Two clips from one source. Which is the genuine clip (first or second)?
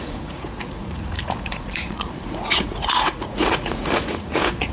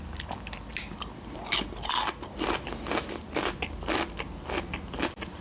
second